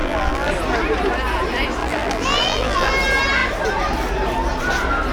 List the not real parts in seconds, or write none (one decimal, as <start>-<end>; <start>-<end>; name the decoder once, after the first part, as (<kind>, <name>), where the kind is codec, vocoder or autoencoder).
0.0-0.5 (vocoder, BigVGAN v2); 1.8-2.9